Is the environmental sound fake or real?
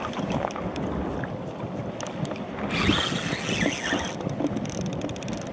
real